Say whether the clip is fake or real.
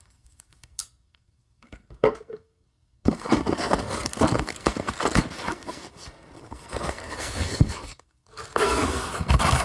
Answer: fake